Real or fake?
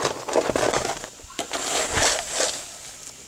real